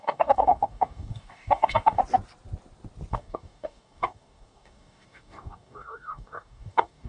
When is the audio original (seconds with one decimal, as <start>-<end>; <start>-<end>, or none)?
2.0-3.1